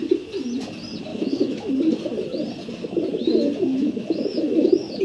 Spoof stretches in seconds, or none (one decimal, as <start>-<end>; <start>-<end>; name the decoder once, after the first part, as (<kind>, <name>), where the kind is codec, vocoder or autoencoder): 1.1-1.7 (autoencoder, DAC-VAE); 3.7-5.0